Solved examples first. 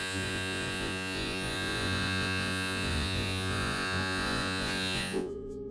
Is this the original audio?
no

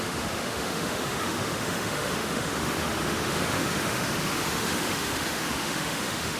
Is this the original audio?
no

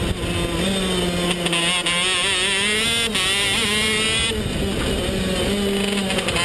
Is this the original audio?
yes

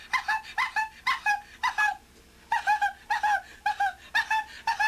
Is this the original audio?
yes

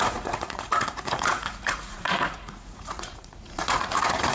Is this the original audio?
no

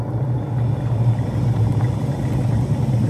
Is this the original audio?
yes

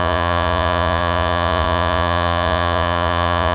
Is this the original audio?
no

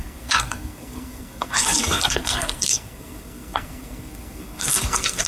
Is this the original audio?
no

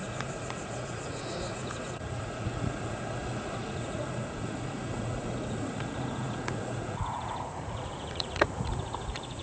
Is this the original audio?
no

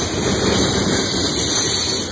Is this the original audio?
yes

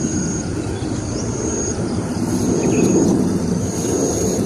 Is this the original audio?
no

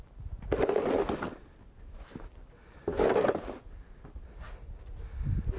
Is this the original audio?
yes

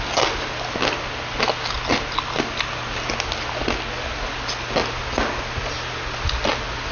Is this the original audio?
yes